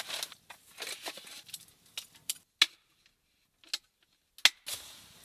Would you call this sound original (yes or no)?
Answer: yes